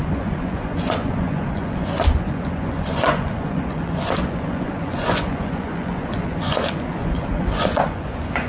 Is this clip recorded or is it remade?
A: remade